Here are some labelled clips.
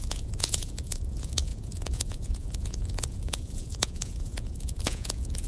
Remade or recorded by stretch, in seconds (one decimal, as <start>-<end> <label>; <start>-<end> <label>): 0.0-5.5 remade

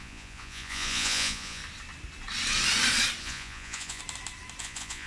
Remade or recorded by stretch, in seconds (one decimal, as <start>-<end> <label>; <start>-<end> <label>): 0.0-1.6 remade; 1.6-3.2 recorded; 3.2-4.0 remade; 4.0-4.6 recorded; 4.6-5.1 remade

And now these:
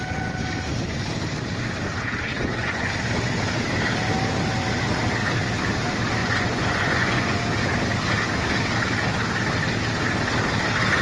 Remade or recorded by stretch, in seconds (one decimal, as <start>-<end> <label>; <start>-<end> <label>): 0.0-2.3 recorded; 2.3-2.9 remade; 2.9-6.2 recorded; 6.2-7.4 remade; 7.4-11.0 recorded

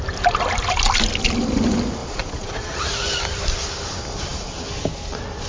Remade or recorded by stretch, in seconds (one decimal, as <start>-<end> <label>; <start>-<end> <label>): 0.0-2.0 recorded; 2.0-2.8 remade; 2.8-5.5 recorded